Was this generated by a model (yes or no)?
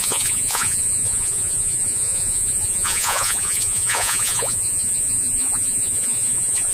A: yes